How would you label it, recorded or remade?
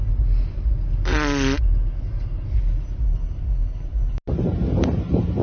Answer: recorded